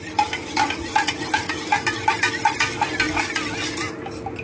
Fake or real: real